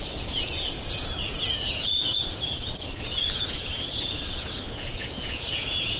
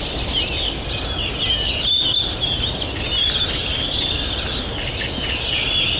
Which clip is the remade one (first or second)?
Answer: first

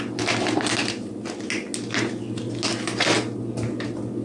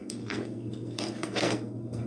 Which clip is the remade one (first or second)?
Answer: second